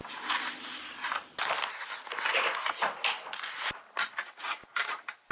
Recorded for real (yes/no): yes